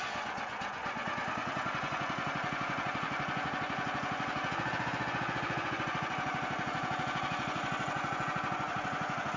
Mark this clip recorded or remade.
remade